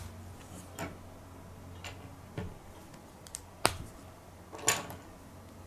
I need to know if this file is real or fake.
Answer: real